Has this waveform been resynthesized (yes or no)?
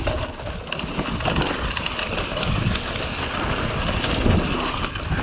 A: no